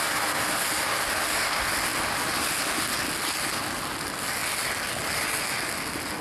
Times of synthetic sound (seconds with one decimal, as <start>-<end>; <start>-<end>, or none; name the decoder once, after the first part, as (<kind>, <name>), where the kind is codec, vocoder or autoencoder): none